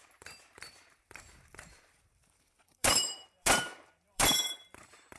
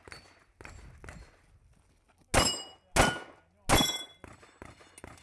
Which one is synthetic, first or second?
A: first